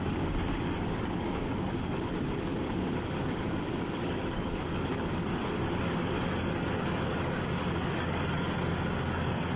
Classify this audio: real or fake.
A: fake